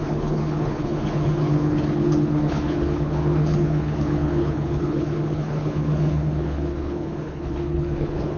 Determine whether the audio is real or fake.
fake